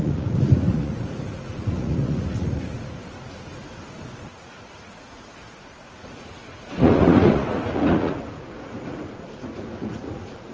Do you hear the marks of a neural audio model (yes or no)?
yes